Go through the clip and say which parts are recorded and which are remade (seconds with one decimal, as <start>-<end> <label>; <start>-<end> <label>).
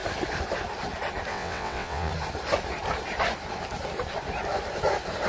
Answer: 0.0-1.3 recorded; 1.3-2.1 remade; 2.1-5.3 recorded